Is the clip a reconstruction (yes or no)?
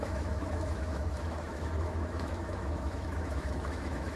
yes